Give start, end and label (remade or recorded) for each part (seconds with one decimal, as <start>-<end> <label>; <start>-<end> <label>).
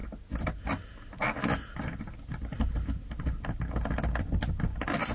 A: 0.0-5.1 recorded